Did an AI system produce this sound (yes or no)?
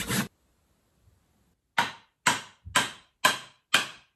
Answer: no